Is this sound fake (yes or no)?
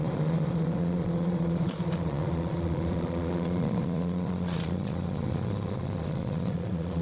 yes